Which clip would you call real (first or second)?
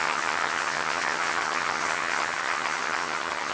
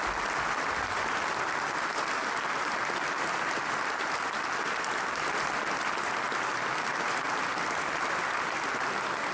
second